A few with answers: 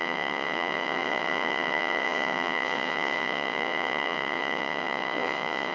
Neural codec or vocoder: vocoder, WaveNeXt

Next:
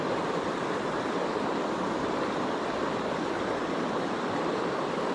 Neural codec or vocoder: vocoder, BigVGAN v2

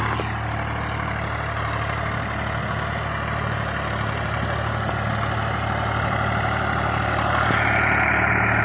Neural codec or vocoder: none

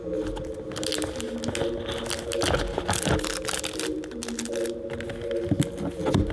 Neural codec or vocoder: none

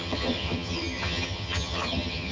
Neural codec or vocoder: vocoder, HiFi-GAN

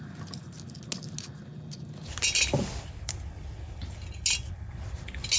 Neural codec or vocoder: none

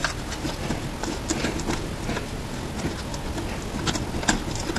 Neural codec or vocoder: none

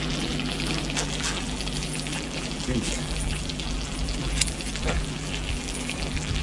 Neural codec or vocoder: vocoder, BigVGAN v2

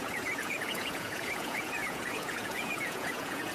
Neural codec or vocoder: vocoder, Vocos